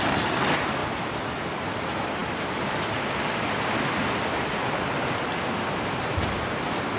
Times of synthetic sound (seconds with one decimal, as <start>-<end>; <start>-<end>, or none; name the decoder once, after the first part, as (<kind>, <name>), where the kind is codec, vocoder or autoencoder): none